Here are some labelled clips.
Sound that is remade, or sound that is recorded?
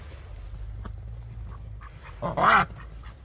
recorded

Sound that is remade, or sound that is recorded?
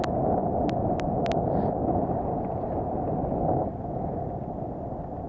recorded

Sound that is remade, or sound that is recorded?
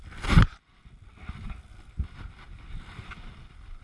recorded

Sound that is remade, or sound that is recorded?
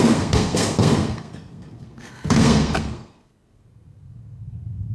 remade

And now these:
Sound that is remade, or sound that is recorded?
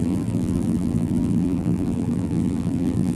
remade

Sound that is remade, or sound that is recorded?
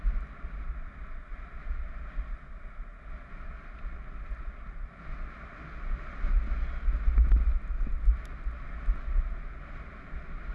recorded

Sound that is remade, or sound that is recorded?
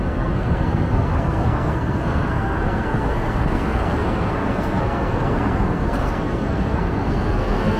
remade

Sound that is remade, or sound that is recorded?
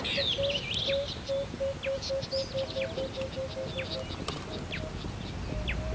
recorded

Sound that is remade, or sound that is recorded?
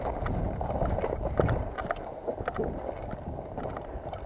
recorded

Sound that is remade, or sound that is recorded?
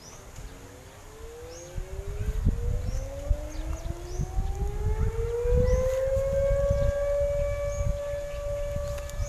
recorded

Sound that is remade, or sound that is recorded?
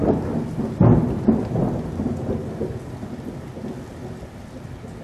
recorded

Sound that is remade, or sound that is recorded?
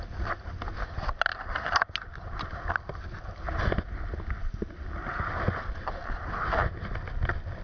recorded